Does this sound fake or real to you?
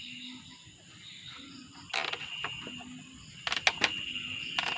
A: real